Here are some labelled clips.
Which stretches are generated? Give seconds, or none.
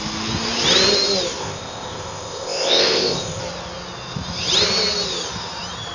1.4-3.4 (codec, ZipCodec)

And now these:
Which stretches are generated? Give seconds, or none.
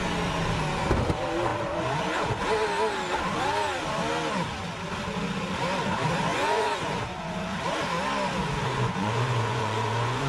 6.3-7.0 (vocoder, Vocos); 8.7-10.3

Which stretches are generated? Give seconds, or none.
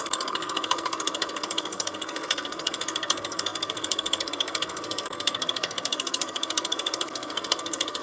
0.0-8.0 (codec, SNAC)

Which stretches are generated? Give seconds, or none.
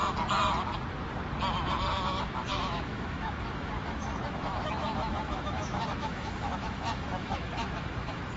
2.1-8.4 (autoencoder, DAC-VAE)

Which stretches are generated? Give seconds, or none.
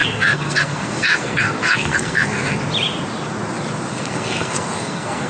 0.0-2.6 (codec, SNAC); 3.9-5.3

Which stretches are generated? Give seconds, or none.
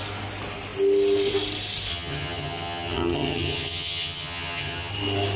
1.9-4.9 (vocoder, HiFi-GAN)